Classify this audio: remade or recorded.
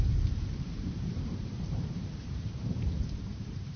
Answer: remade